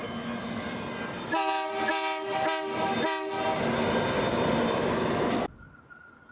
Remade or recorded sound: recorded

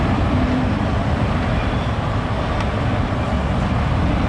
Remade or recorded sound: recorded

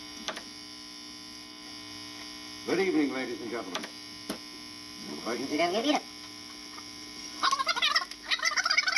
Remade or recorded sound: recorded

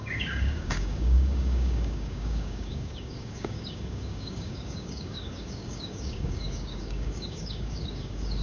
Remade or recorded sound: remade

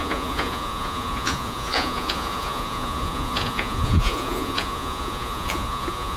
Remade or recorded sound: remade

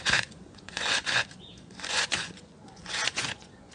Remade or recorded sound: remade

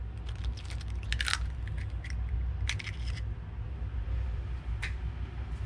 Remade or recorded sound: recorded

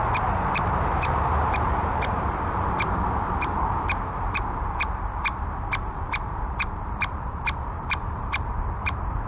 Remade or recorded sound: remade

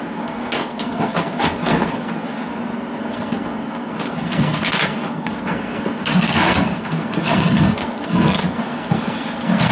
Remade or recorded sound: remade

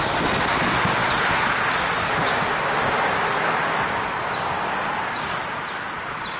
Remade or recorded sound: recorded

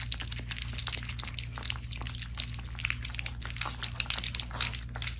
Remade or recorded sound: recorded